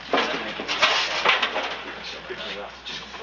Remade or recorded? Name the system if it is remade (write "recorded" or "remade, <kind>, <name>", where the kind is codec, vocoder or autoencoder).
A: recorded